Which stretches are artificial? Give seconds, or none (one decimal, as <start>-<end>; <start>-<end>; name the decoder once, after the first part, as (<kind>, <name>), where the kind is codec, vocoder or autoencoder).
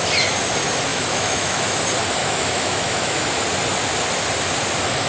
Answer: 0.9-1.8 (autoencoder, DAC-VAE); 2.2-3.3